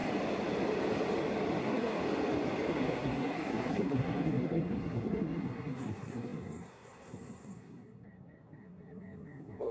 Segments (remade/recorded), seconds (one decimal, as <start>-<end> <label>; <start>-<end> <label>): 0.0-1.6 recorded; 1.6-2.0 remade; 2.0-2.7 recorded; 2.7-9.7 remade